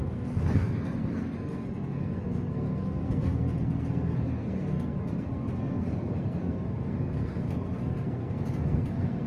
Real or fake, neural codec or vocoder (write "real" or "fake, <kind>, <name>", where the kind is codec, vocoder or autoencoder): fake, codec, SNAC